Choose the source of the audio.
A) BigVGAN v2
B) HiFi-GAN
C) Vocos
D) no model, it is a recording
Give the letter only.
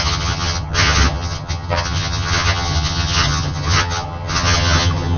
B